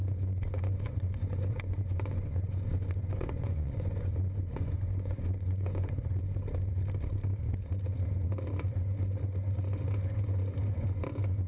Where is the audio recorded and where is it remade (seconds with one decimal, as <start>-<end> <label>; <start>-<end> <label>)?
0.0-4.1 remade; 4.1-4.5 recorded; 4.5-6.2 remade; 6.2-11.5 recorded